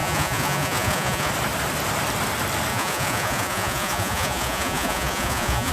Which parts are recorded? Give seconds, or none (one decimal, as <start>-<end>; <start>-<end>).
1.3-2.7